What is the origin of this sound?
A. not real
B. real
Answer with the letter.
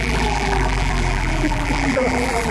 A